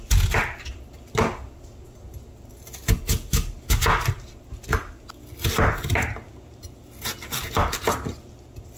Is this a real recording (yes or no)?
yes